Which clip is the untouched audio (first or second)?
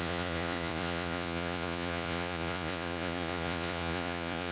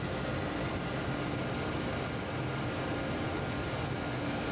second